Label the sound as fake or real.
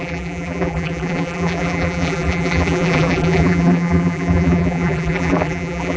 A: fake